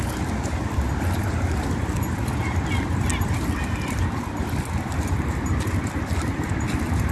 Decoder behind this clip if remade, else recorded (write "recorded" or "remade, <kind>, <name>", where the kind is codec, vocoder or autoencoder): recorded